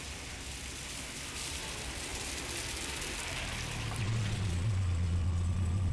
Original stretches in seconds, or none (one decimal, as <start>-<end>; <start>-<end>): 0.0-4.0